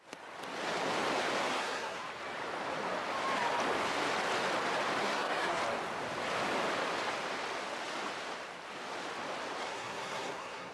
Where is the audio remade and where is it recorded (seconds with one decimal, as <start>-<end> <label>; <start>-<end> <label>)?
0.0-1.4 recorded; 1.4-2.0 remade; 2.0-5.0 recorded; 5.0-5.6 remade; 5.6-9.6 recorded; 9.6-10.7 remade